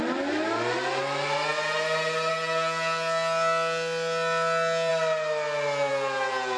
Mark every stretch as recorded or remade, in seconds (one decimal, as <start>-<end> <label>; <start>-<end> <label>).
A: 0.0-6.6 recorded